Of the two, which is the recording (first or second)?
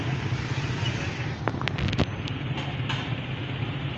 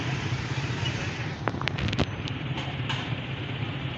first